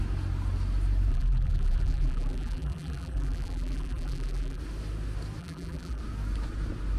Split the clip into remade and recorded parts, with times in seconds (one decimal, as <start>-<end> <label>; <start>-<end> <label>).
0.0-1.1 recorded; 1.1-4.6 remade; 4.6-5.4 recorded; 5.4-6.0 remade; 6.0-7.0 recorded